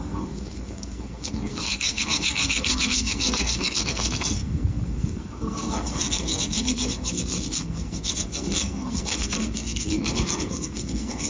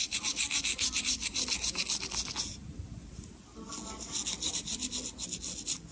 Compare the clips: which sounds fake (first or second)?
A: first